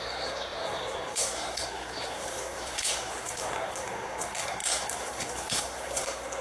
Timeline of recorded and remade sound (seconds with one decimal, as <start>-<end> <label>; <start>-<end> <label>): 0.0-6.4 remade